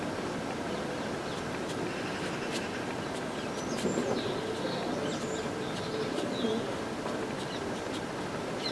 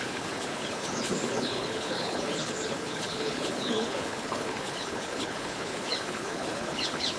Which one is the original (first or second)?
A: first